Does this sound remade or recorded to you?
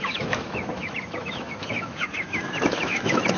remade